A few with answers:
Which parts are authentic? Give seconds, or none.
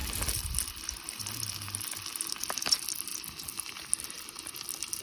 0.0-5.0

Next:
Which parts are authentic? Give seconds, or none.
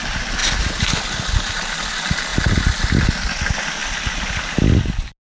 0.0-5.4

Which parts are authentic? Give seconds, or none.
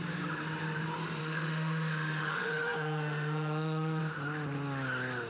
0.0-1.2; 4.0-5.3